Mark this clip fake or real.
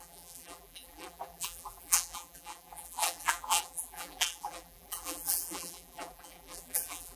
fake